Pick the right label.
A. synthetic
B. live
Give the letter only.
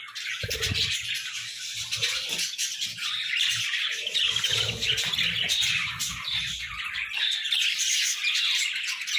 A